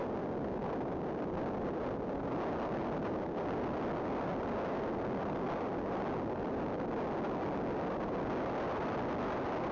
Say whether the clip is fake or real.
real